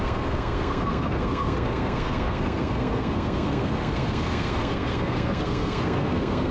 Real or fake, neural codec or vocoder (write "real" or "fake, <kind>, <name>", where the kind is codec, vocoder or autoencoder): fake, codec, SNAC